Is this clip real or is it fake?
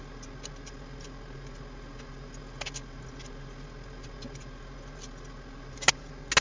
real